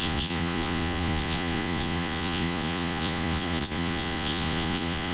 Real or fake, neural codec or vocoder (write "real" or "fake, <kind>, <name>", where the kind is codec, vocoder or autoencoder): fake, vocoder, Vocos